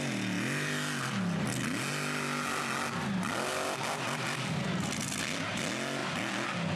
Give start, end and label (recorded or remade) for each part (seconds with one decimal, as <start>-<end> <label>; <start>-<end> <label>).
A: 0.0-6.8 recorded